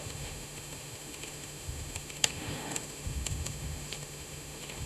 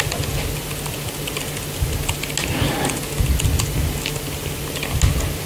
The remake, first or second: first